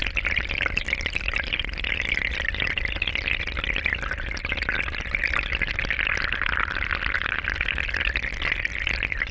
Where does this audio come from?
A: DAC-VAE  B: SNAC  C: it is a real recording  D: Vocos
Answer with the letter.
C